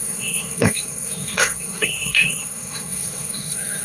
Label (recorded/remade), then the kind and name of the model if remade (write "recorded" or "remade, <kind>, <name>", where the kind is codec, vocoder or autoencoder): remade, codec, SNAC